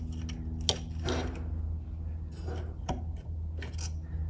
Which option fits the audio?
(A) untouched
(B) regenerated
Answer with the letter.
A